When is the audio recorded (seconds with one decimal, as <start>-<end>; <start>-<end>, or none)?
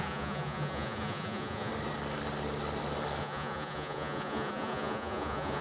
1.7-3.2